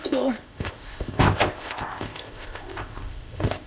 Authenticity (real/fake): fake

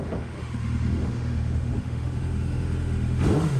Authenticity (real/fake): fake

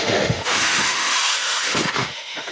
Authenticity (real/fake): fake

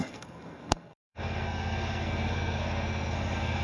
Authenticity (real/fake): fake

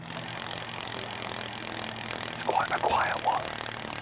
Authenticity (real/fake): real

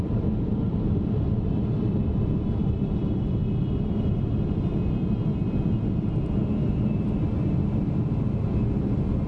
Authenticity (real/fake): real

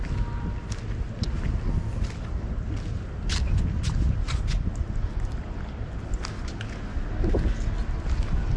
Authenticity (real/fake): real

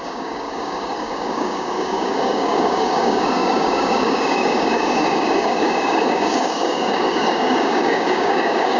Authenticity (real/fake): fake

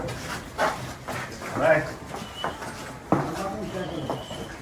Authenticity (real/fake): real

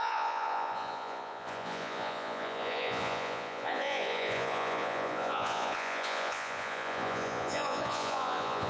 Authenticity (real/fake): fake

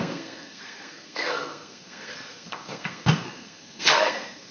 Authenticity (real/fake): fake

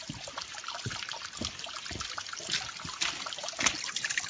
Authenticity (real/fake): real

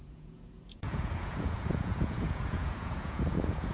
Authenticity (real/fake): fake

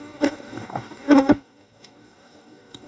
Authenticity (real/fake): fake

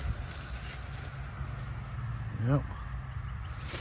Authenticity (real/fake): real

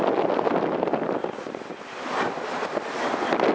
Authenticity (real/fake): real